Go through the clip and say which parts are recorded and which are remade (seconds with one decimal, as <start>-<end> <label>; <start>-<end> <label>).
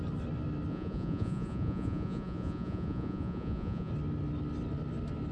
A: 0.0-0.7 recorded; 0.7-3.9 remade; 3.9-5.3 recorded